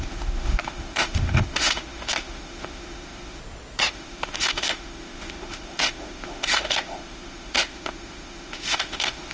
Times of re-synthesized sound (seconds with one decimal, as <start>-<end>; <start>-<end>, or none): 0.0-3.4; 3.9-9.3